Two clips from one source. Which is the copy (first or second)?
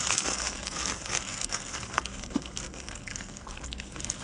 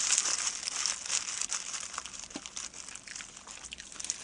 first